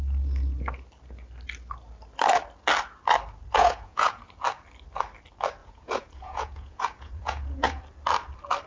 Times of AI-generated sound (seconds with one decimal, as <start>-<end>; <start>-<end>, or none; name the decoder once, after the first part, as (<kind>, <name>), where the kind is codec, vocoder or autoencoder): 3.5-4.2 (vocoder, Vocos); 5.6-7.8